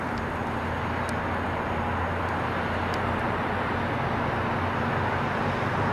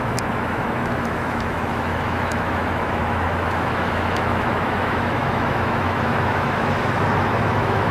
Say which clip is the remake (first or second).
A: second